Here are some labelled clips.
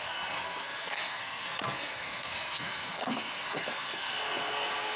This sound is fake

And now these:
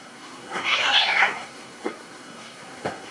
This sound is fake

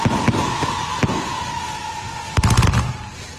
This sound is real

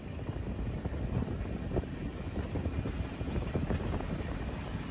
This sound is real